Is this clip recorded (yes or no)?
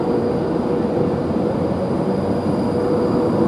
yes